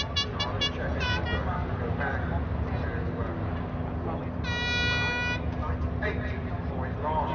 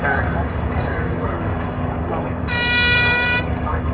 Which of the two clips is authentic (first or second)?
first